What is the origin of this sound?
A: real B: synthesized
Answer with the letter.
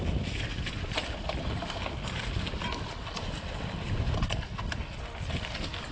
A